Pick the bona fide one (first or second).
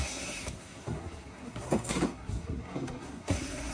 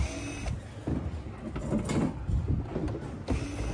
second